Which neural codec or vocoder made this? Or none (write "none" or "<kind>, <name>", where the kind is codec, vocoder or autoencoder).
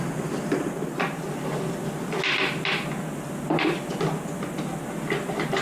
none